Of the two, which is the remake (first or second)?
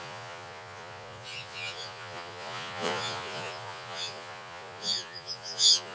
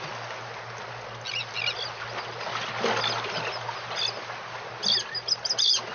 first